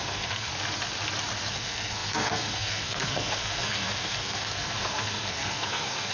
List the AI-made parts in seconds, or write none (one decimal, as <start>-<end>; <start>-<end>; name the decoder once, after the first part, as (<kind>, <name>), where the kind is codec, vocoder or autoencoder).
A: 0.0-0.5 (codec, SNAC); 1.5-6.1